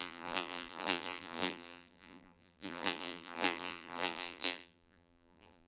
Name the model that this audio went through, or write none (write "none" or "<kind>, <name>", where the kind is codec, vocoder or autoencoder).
vocoder, BigVGAN v2